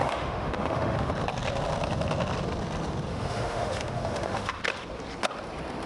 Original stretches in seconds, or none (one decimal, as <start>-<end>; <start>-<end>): 1.1-3.1; 4.6-5.9